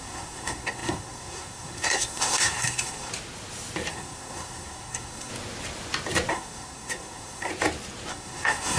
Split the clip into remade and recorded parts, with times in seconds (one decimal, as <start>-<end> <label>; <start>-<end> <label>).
0.0-3.1 remade; 3.1-3.9 recorded; 3.9-5.3 remade; 5.3-6.3 recorded; 6.3-7.5 remade; 7.5-8.1 recorded; 8.1-8.8 remade